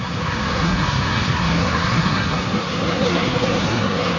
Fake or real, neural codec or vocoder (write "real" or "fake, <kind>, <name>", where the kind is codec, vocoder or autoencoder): fake, codec, SNAC